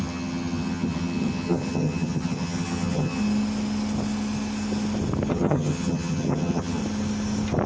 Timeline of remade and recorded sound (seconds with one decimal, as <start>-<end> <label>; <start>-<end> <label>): 0.0-3.2 remade; 3.2-5.3 recorded; 5.3-6.8 remade; 6.8-7.7 recorded